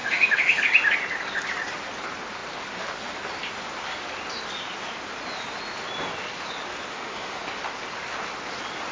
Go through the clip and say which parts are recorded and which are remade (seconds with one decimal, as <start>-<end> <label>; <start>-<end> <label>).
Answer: 0.0-0.6 remade; 0.6-6.9 recorded; 6.9-7.4 remade; 7.4-8.9 recorded